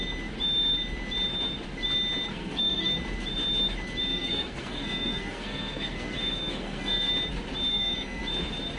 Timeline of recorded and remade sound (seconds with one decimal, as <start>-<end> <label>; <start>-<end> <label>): 0.0-2.3 recorded; 2.3-2.9 remade; 2.9-4.1 recorded; 4.1-7.1 remade; 7.1-7.7 recorded; 7.7-8.2 remade; 8.2-8.8 recorded